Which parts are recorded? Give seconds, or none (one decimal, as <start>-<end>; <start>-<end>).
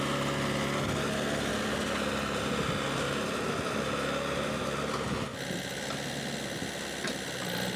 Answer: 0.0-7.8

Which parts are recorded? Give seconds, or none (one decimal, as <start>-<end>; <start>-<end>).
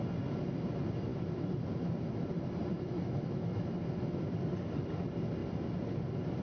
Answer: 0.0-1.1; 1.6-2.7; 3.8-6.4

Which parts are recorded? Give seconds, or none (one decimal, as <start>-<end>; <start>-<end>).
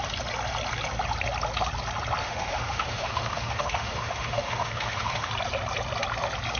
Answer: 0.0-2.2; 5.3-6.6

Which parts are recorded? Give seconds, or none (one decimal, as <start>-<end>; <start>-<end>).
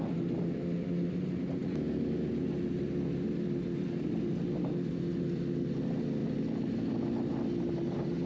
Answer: 0.0-8.3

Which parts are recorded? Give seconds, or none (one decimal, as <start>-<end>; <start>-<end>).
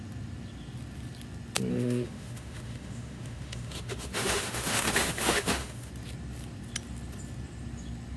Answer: 0.0-1.7; 5.9-8.2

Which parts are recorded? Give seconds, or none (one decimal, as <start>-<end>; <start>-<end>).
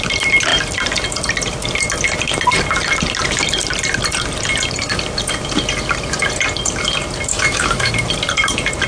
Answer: 0.0-7.3; 7.9-8.9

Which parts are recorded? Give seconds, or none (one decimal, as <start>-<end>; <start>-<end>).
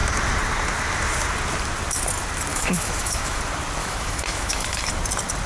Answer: 0.0-2.5; 3.4-3.8; 4.9-5.5